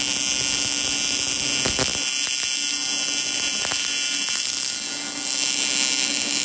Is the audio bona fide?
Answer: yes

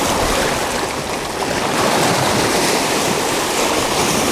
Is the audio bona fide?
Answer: no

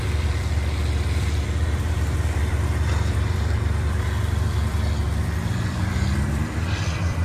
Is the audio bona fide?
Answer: no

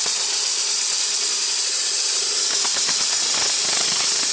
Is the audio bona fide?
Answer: no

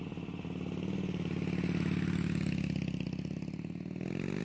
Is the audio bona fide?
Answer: yes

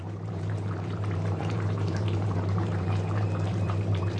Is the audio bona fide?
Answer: no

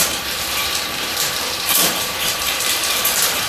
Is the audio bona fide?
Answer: no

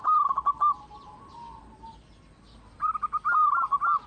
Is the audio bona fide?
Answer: yes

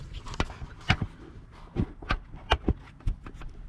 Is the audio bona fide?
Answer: yes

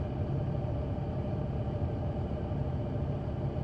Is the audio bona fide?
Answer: yes